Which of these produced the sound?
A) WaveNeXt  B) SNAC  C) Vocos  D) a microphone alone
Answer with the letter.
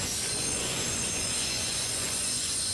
C